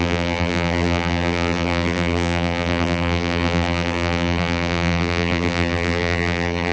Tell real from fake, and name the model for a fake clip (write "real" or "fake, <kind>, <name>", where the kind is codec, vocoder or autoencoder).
fake, vocoder, BigVGAN v2